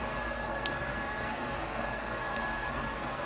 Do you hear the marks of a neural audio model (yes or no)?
yes